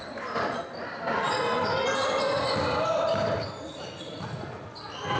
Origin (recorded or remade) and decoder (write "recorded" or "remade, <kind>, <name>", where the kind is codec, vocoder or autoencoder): recorded